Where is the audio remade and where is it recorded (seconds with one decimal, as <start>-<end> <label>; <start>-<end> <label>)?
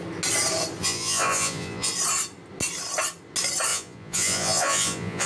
0.0-0.8 recorded; 0.8-1.9 remade; 1.9-3.7 recorded; 3.7-5.3 remade